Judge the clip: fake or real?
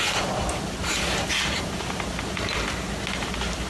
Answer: real